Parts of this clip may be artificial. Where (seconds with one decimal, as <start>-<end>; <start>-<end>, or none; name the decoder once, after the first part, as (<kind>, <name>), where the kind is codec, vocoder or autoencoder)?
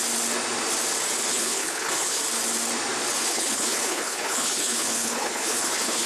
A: 1.3-2.2 (codec, HILCodec); 3.2-6.1